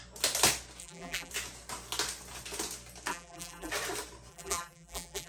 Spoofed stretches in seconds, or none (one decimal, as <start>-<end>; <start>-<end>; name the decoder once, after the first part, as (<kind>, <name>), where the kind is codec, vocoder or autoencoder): 0.8-1.3 (vocoder, BigVGAN v2); 3.1-3.7; 4.3-5.3